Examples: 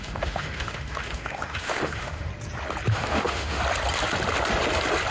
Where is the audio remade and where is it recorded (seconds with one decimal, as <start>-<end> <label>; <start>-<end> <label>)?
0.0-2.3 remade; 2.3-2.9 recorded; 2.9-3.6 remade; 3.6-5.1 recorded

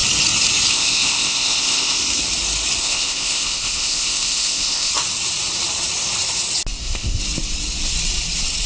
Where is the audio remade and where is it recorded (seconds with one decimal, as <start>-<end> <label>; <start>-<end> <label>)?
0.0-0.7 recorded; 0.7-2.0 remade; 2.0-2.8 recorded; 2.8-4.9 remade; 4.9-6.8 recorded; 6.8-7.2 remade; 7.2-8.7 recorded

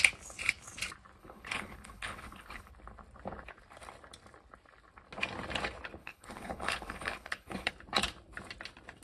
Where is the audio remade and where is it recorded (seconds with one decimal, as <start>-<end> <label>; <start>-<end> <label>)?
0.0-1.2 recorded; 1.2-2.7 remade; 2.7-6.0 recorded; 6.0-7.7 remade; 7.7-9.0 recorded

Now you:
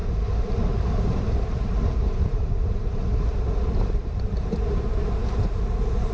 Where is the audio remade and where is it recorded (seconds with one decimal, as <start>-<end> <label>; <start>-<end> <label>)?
0.0-0.7 recorded; 0.7-6.1 remade